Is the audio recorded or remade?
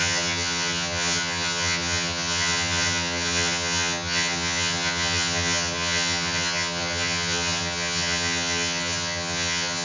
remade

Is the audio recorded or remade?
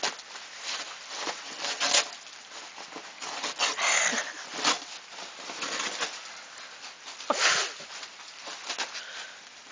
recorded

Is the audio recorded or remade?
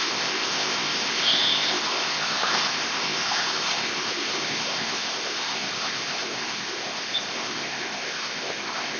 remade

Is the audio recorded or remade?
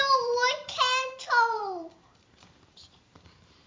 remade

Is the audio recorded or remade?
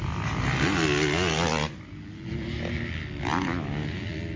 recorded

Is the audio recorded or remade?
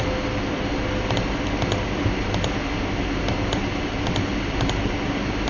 recorded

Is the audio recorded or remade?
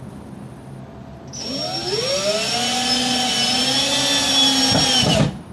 recorded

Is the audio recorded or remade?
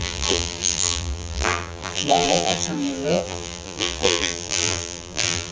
remade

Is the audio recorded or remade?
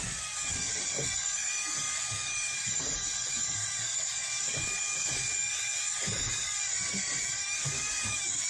remade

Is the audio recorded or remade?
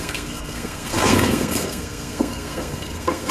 remade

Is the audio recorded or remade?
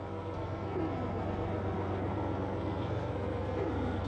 remade